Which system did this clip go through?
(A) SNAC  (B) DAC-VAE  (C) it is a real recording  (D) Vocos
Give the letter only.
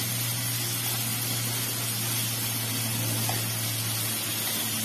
C